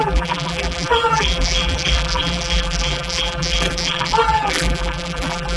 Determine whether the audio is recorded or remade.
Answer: remade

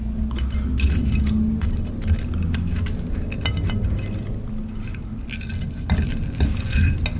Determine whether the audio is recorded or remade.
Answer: recorded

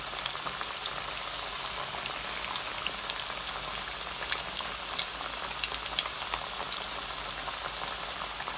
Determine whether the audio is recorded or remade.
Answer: recorded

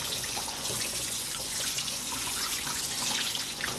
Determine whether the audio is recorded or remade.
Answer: remade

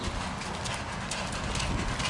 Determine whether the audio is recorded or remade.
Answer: recorded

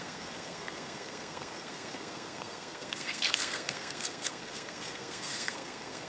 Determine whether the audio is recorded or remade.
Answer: remade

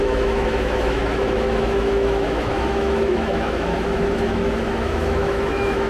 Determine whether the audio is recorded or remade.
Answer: remade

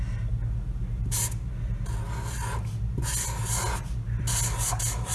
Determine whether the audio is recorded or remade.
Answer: recorded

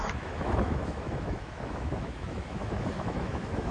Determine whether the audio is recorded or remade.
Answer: remade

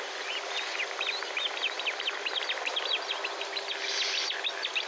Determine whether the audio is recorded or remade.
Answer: recorded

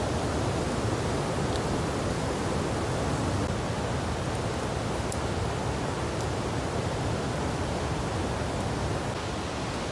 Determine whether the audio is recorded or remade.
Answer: recorded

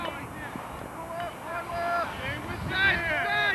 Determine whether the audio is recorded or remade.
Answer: recorded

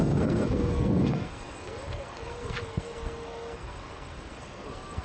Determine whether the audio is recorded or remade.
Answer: remade